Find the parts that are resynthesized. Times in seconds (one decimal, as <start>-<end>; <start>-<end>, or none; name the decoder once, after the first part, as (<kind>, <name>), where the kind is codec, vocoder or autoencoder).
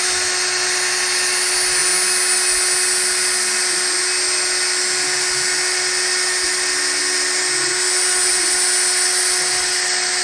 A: none